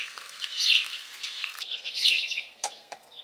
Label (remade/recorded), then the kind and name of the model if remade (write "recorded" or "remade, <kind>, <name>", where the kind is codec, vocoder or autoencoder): remade, codec, SNAC